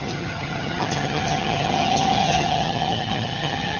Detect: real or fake fake